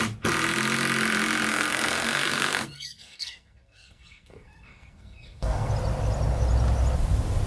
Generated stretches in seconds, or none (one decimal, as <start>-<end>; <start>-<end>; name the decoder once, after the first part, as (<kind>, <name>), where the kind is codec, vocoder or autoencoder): 1.5-5.7 (codec, SNAC)